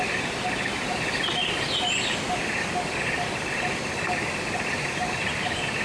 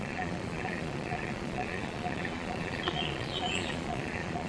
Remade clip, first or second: second